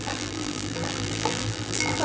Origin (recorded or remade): remade